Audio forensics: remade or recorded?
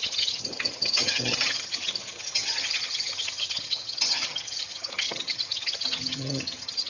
remade